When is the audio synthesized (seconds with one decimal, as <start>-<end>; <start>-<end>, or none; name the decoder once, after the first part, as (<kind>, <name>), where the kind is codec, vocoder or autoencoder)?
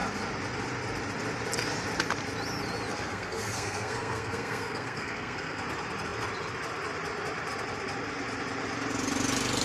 2.9-5.6 (codec, SNAC)